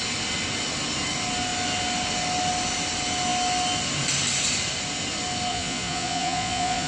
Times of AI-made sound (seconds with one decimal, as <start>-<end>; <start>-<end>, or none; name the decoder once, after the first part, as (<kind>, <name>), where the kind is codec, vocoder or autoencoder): 5.5-6.9 (vocoder, Vocos)